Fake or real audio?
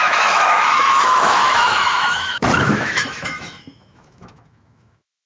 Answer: fake